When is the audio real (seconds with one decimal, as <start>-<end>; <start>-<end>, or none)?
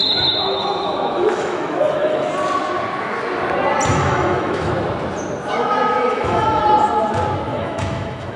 2.3-3.9; 4.7-6.1; 6.6-7.5